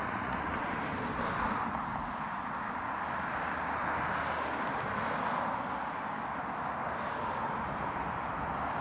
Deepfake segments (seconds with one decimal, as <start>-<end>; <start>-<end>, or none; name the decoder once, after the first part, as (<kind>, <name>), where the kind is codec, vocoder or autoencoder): 0.0-0.7 (vocoder, Vocos)